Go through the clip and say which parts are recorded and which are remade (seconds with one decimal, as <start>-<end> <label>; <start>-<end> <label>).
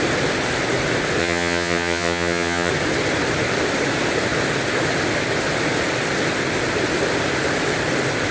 0.0-1.2 recorded; 1.2-2.7 remade; 2.7-8.3 recorded